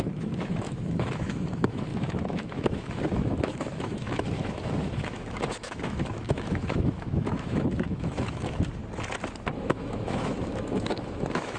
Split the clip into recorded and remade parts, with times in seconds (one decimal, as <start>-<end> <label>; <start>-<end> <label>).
0.0-8.8 remade; 8.8-9.6 recorded; 9.6-11.6 remade